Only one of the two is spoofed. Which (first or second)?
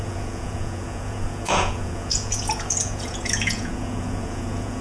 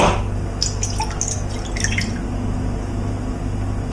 first